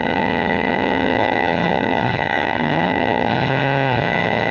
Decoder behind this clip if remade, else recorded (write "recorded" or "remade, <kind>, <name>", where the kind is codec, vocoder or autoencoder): remade, vocoder, HiFi-GAN